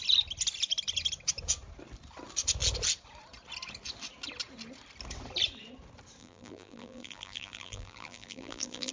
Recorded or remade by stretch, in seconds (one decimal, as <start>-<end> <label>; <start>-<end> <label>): 0.0-6.2 recorded; 6.2-8.9 remade